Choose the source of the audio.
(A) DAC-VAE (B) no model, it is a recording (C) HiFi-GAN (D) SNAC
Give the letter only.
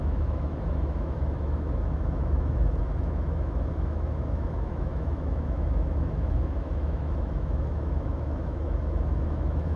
A